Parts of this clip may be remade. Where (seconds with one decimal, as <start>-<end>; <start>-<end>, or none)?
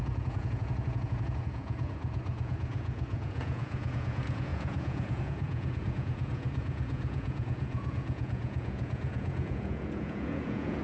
0.0-10.8